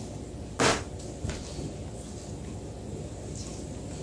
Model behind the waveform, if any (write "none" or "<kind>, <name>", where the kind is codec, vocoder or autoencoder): none